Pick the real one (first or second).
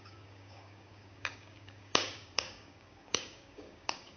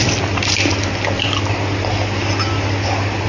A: second